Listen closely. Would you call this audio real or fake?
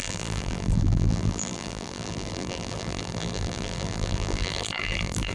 fake